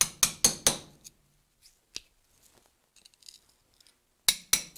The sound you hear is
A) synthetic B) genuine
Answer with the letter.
B